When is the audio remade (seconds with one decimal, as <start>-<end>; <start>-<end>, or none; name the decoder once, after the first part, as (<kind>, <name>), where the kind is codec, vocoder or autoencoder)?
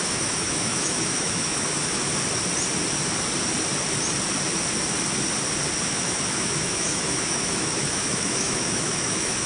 0.0-2.1 (autoencoder, DAC-VAE); 5.8-9.5